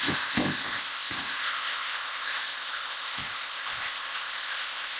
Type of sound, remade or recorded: remade